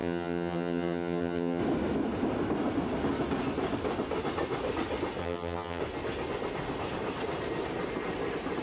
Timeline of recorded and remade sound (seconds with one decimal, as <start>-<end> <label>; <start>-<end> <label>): 0.0-1.6 remade; 1.6-5.2 recorded; 5.2-5.8 remade; 5.8-8.6 recorded